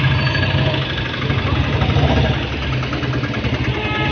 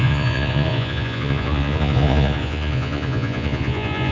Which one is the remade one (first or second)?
second